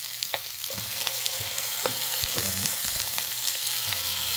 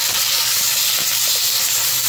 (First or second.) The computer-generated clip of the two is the first